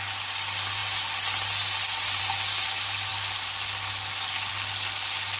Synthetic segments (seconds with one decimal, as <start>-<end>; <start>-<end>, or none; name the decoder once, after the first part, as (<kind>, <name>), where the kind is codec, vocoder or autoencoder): none